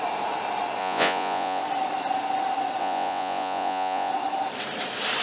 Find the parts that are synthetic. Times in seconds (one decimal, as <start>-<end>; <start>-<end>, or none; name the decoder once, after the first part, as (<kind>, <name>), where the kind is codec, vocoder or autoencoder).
0.8-1.6 (vocoder, Vocos); 2.8-4.1